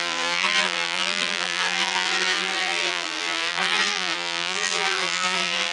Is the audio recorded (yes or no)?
no